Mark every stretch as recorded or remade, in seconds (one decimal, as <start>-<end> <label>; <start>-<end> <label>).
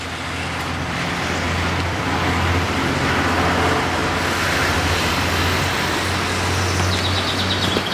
0.0-7.9 recorded